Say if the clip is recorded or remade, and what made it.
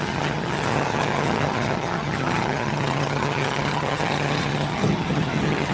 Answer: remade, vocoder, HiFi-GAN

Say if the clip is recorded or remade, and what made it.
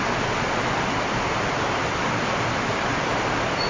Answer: recorded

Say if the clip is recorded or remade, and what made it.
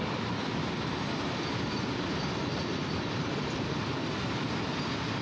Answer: recorded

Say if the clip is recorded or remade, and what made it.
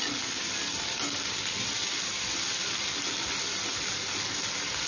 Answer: recorded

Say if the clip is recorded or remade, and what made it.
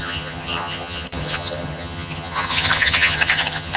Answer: remade, vocoder, HiFi-GAN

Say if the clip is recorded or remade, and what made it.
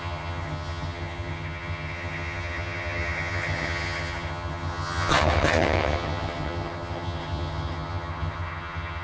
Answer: remade, vocoder, HiFi-GAN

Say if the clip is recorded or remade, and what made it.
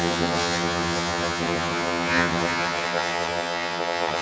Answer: remade, vocoder, HiFi-GAN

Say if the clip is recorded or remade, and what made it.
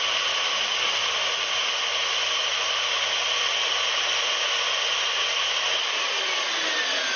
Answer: recorded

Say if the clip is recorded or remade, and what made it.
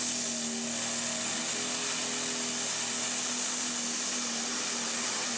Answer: recorded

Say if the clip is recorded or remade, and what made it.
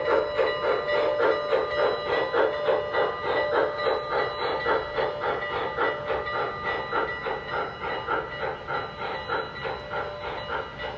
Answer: recorded